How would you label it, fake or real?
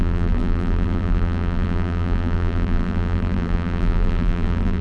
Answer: fake